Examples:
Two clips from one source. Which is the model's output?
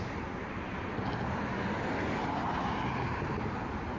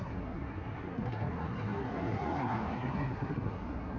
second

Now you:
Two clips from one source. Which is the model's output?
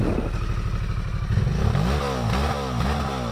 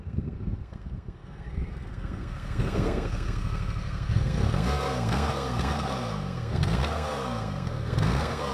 second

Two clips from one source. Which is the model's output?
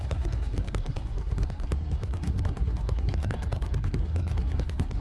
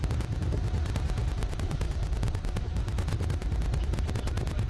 first